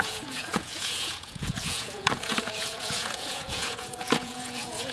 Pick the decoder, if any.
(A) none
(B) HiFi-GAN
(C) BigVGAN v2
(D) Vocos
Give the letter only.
D